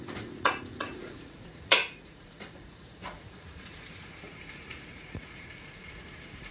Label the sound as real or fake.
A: fake